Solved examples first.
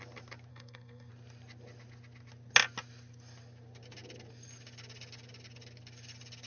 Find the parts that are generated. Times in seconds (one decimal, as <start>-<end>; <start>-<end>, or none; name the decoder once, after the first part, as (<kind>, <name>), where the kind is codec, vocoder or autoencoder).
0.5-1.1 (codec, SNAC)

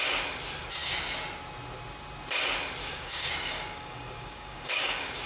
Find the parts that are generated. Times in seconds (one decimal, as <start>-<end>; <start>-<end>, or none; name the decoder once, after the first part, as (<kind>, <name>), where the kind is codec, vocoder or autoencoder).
2.8-5.3 (codec, DAC)

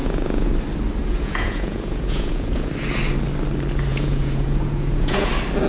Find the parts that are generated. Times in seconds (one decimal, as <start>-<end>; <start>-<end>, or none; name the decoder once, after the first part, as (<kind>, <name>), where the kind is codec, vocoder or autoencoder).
0.0-0.5 (vocoder, Vocos); 1.0-2.7; 3.9-5.3

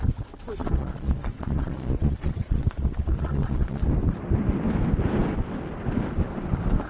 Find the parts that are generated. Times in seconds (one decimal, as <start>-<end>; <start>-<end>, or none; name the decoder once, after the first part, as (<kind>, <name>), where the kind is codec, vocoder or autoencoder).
0.6-3.8 (vocoder, Vocos)

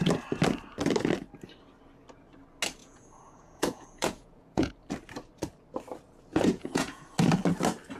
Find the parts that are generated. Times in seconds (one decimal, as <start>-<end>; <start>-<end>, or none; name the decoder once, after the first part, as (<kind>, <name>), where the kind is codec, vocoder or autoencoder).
2.8-4.7 (vocoder, Vocos); 6.3-7.0